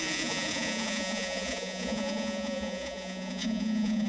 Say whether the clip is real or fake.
fake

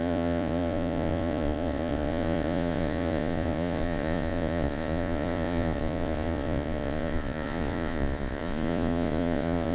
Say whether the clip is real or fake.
fake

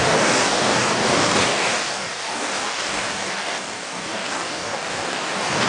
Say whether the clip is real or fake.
fake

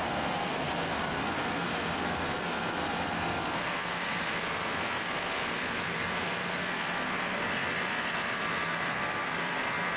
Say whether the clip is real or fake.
fake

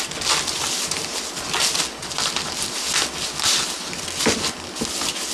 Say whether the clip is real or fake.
real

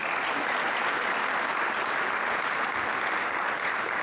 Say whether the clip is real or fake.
real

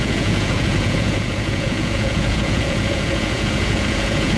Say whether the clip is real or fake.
fake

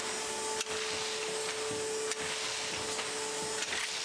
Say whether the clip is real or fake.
real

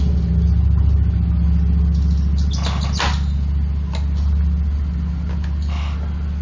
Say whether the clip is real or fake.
real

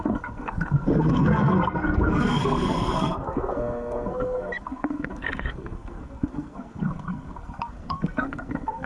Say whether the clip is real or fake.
fake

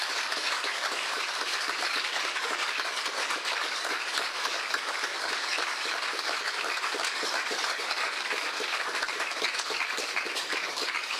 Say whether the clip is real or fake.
fake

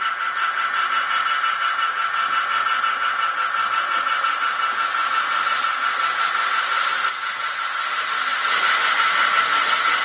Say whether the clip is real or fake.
real